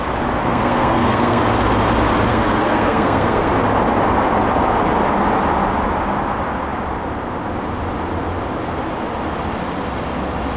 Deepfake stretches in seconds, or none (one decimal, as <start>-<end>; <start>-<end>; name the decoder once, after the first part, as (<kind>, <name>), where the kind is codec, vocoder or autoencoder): 0.4-1.4 (codec, SNAC); 2.3-3.5